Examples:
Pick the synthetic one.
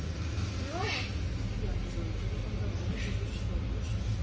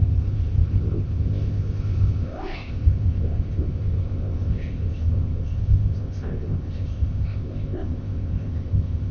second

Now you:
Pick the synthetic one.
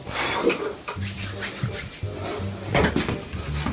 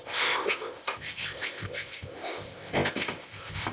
second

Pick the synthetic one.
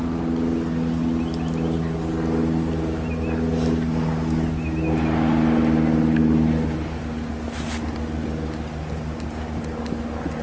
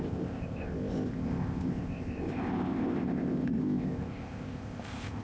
second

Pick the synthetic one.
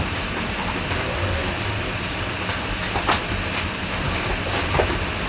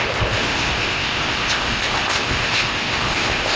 second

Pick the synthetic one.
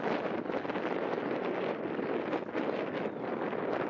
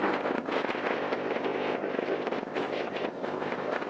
second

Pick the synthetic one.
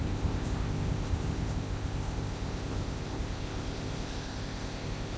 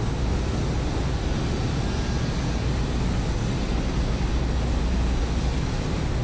first